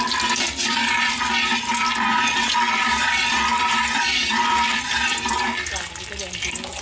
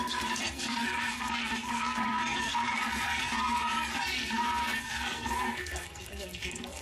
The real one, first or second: first